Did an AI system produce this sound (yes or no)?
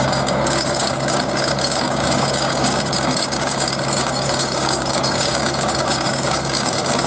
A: yes